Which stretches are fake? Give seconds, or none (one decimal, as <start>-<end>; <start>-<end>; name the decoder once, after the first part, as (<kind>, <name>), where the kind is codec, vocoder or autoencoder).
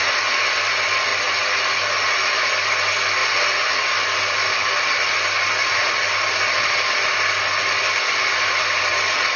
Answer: none